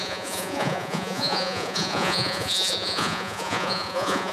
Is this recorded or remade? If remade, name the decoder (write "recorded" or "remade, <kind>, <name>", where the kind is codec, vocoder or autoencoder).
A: remade, vocoder, Vocos